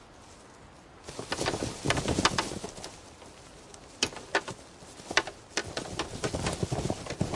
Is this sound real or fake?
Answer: real